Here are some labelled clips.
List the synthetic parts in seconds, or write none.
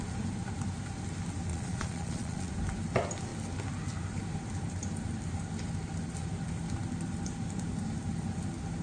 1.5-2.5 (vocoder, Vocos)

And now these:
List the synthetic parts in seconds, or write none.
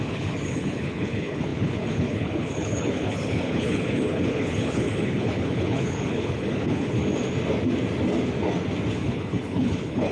0.0-7.0 (codec, HILCodec); 8.9-10.1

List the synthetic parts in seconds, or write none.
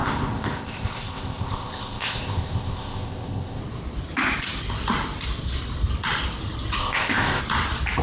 0.0-3.6 (codec, ZipCodec); 6.8-7.4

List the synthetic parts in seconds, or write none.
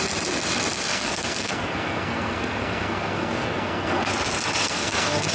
0.9-4.1 (codec, SNAC); 4.6-5.3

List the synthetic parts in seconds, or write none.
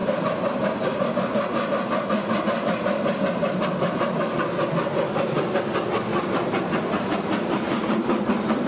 0.0-1.1 (vocoder, BigVGAN v2); 6.1-8.7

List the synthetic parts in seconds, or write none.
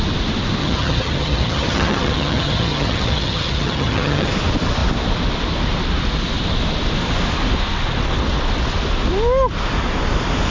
0.6-4.3 (vocoder, HiFi-GAN)